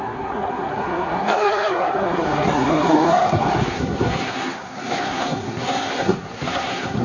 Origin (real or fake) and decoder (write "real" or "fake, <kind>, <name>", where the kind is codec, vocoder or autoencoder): fake, codec, SNAC